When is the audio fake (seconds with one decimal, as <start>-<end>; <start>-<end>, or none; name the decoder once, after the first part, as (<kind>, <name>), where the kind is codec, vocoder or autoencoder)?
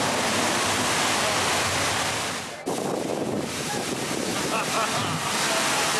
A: none